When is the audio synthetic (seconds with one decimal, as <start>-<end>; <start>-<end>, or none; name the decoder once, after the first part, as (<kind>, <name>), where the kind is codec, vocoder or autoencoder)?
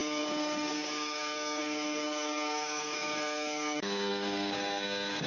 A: 0.0-5.3 (codec, DAC)